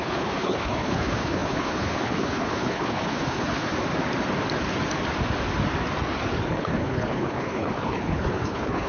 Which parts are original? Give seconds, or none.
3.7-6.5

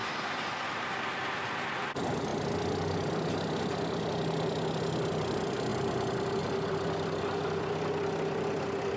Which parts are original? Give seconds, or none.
0.0-9.0

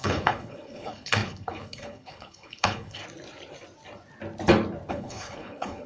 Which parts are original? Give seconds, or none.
3.0-4.9